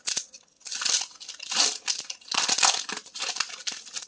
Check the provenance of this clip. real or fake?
real